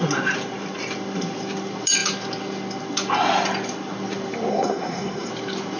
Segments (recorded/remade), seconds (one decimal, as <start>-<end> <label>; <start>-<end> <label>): 0.0-4.5 recorded; 4.5-5.3 remade; 5.3-5.8 recorded